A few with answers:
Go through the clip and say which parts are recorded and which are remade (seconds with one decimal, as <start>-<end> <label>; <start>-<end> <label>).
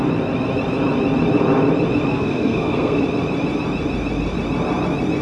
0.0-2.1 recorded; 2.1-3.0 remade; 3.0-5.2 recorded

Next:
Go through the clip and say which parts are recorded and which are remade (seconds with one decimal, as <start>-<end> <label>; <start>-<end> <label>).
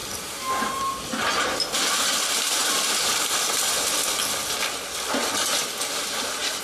0.0-6.6 recorded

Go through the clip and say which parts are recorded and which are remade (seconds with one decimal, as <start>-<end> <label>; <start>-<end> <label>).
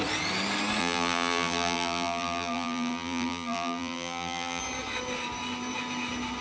0.0-0.8 recorded; 0.8-4.6 remade; 4.6-6.4 recorded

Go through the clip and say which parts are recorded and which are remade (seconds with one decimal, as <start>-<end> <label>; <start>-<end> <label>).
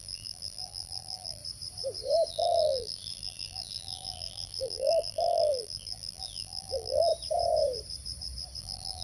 0.0-1.4 remade; 1.4-2.3 recorded; 2.3-7.1 remade; 7.1-8.6 recorded; 8.6-9.0 remade